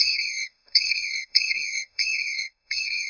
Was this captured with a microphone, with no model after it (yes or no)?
no